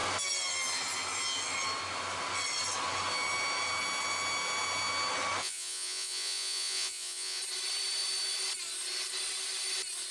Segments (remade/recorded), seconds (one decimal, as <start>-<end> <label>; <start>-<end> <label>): 0.0-5.4 recorded; 5.4-7.4 remade; 7.4-10.1 recorded

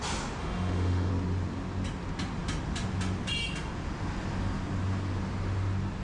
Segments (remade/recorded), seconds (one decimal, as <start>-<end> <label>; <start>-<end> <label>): 0.0-0.4 recorded; 0.4-1.1 remade; 1.1-6.0 recorded

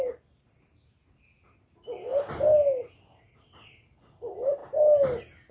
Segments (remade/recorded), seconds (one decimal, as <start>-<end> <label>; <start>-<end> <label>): 0.0-2.1 remade; 2.1-3.2 recorded; 3.2-4.6 remade; 4.6-5.5 recorded

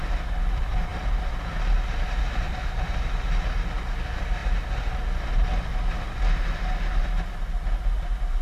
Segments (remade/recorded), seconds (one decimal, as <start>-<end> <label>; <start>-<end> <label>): 0.0-8.4 recorded